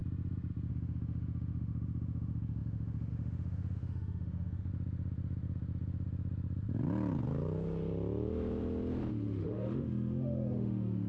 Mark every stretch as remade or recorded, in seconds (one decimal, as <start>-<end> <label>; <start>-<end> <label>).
0.0-0.7 recorded; 0.7-4.7 remade; 4.7-9.1 recorded; 9.1-11.1 remade

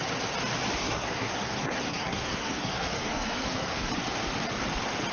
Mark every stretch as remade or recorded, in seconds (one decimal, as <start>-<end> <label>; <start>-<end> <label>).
0.0-0.8 recorded; 0.8-3.9 remade; 3.9-5.1 recorded

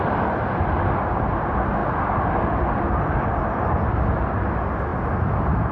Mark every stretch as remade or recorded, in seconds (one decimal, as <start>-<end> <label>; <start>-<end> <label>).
0.0-5.7 recorded

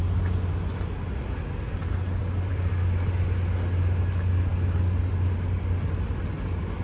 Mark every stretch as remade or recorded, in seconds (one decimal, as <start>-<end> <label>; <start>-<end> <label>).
0.0-2.2 recorded; 2.2-2.7 remade; 2.7-6.8 recorded

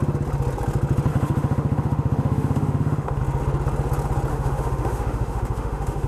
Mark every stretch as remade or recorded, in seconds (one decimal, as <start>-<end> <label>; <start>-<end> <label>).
0.0-1.1 recorded; 1.1-3.2 remade; 3.2-4.3 recorded; 4.3-6.1 remade

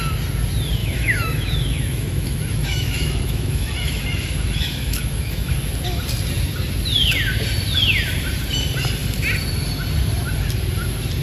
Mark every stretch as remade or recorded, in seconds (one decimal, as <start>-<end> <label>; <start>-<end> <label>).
0.0-0.8 recorded; 0.8-5.5 remade; 5.5-11.2 recorded

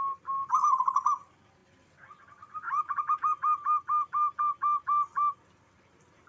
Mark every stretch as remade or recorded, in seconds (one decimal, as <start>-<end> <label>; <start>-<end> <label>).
0.0-6.3 recorded

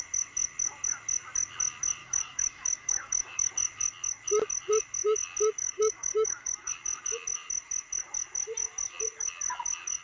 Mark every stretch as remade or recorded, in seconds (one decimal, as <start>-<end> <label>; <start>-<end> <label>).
0.0-2.0 recorded; 2.0-3.5 remade; 3.5-5.6 recorded; 5.6-6.7 remade; 6.7-10.0 recorded